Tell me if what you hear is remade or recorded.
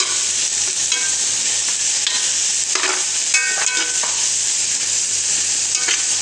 recorded